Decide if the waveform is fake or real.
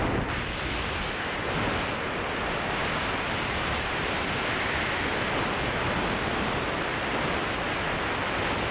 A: real